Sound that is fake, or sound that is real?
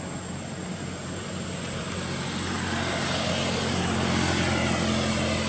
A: real